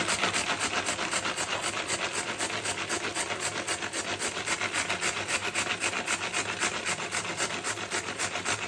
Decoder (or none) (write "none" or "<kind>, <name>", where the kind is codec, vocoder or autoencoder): none